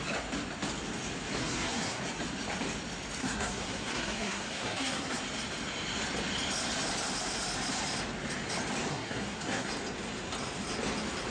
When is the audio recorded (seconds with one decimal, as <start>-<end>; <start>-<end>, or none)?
0.0-1.4; 2.0-3.2; 5.2-8.9; 9.7-11.3